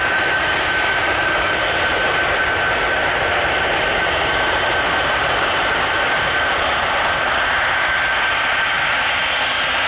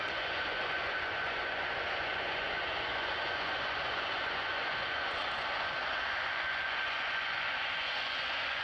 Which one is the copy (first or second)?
second